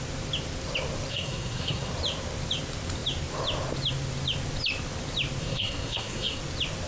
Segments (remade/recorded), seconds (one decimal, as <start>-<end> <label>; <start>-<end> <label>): 0.0-1.1 recorded; 1.1-1.9 remade; 1.9-5.4 recorded; 5.4-6.4 remade; 6.4-6.9 recorded